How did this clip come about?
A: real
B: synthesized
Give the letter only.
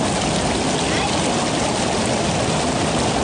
A